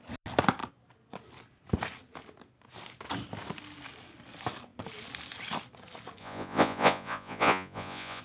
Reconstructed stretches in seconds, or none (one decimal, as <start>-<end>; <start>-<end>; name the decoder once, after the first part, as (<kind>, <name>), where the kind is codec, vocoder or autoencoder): 6.2-8.2 (vocoder, Vocos)